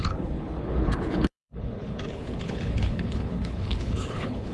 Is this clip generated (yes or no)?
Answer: yes